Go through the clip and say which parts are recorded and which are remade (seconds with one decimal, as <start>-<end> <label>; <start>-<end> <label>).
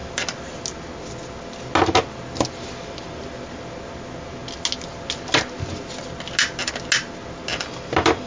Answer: 0.0-8.3 recorded